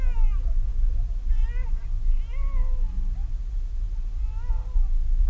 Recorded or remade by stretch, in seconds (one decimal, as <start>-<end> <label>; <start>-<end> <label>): 0.0-5.3 recorded